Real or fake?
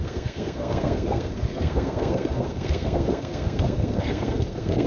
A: fake